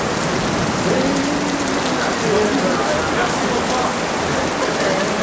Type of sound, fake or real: real